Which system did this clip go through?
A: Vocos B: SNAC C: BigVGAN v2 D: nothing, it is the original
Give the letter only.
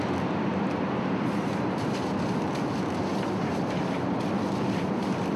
C